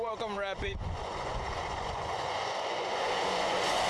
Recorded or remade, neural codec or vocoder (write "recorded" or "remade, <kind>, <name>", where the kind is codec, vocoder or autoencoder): remade, vocoder, Vocos